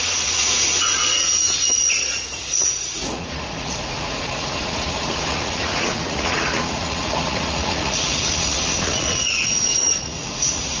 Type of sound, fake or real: fake